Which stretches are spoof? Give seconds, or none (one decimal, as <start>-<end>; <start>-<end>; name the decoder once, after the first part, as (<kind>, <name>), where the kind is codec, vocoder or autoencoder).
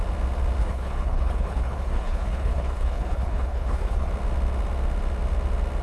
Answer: 0.6-4.1 (codec, HILCodec)